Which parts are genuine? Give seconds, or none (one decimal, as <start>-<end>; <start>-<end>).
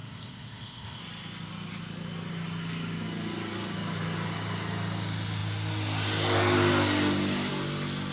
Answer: 1.0-8.1